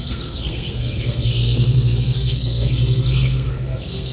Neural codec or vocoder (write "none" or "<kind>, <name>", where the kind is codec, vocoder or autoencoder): codec, SNAC